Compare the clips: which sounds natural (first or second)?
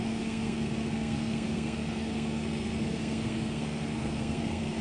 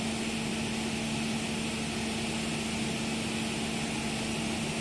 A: second